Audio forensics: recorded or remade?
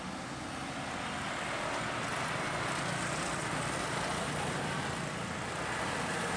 recorded